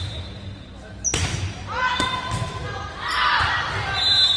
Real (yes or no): yes